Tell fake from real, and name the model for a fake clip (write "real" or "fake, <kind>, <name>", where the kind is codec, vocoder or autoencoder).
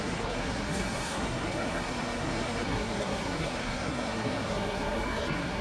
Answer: fake, codec, SNAC